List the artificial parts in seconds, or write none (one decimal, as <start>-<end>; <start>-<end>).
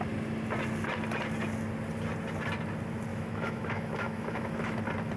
3.1-4.8